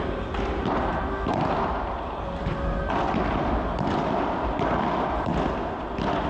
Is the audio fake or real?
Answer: real